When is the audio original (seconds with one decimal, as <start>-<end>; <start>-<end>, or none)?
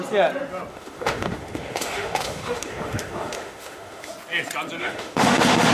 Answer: 0.0-0.7; 4.1-4.8